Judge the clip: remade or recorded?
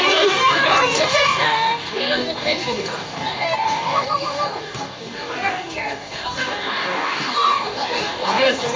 remade